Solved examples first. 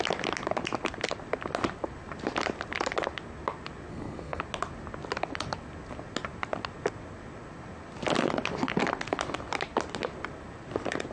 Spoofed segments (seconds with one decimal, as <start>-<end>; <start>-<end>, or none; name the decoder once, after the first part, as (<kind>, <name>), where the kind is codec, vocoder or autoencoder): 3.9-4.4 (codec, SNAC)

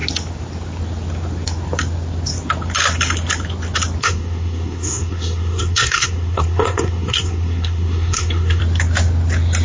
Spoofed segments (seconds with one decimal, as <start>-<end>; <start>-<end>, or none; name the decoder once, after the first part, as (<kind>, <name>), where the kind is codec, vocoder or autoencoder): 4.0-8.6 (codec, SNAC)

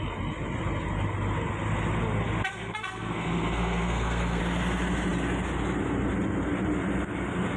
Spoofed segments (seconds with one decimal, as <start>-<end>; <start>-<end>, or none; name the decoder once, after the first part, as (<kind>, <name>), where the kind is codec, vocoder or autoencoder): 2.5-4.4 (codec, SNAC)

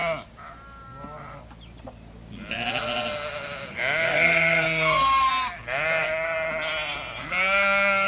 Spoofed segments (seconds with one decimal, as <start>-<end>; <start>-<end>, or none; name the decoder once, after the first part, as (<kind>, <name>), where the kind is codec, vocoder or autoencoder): 4.1-5.3 (codec, SNAC); 7.3-8.1

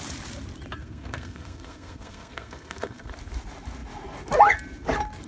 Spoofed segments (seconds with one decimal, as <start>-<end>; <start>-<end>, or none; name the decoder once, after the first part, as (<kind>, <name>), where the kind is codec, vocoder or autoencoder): 0.8-3.1 (codec, SNAC)